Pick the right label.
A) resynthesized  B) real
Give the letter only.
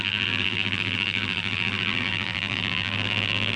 A